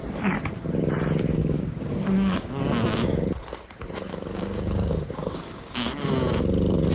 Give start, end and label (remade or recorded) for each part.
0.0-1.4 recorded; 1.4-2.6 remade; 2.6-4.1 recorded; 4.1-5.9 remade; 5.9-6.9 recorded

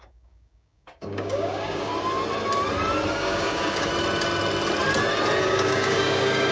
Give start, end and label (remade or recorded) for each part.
0.0-1.9 remade; 1.9-3.1 recorded; 3.1-3.9 remade; 3.9-5.4 recorded; 5.4-6.5 remade

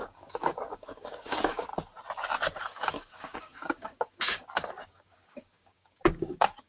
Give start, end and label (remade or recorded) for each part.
0.0-1.7 remade; 1.7-2.6 recorded; 2.6-6.7 remade

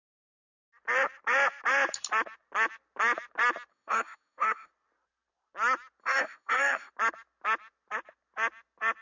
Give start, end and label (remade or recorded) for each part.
0.0-3.7 recorded; 3.7-4.7 remade; 4.7-6.0 recorded; 6.0-6.9 remade; 6.9-9.0 recorded

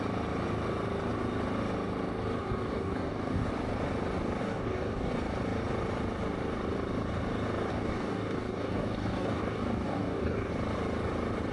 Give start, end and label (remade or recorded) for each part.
0.0-2.4 recorded; 2.4-3.5 remade; 3.5-4.4 recorded; 4.4-5.1 remade; 5.1-7.7 recorded; 7.7-10.5 remade; 10.5-11.5 recorded

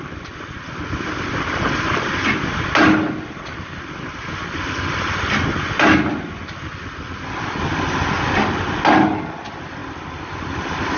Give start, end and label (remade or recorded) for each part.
0.0-11.0 recorded

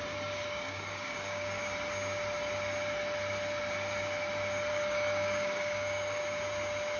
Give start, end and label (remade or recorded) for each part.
0.0-1.6 remade; 1.6-4.7 recorded; 4.7-6.2 remade; 6.2-7.0 recorded

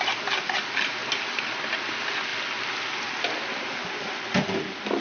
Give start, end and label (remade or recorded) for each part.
0.0-5.0 recorded